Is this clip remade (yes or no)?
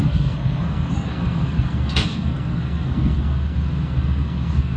yes